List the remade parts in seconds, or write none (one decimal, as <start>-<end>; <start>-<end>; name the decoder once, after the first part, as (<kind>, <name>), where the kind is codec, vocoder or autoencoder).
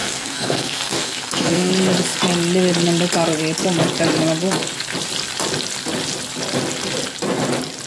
0.0-1.7 (codec, SNAC)